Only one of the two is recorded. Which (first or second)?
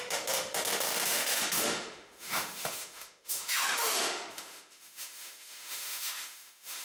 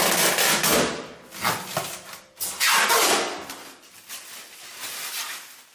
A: second